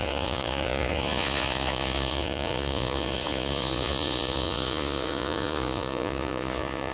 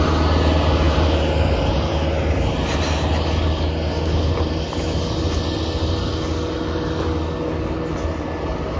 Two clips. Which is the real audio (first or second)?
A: second